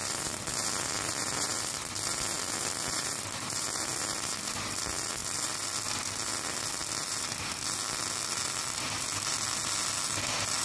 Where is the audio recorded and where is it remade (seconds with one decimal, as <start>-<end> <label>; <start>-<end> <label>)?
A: 0.0-10.6 recorded

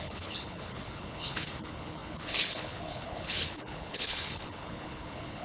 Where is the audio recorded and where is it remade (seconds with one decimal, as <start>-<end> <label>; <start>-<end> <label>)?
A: 0.0-5.4 remade

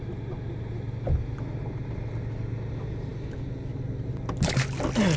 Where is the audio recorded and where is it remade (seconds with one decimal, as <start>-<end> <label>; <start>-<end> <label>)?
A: 0.0-5.2 recorded

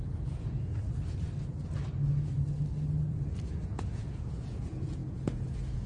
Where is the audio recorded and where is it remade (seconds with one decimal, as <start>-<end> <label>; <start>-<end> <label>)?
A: 0.0-0.7 remade; 0.7-3.5 recorded; 3.5-5.9 remade

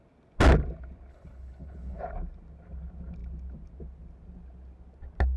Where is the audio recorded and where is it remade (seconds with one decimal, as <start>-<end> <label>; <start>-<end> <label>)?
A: 0.0-1.1 recorded; 1.1-2.0 remade; 2.0-5.4 recorded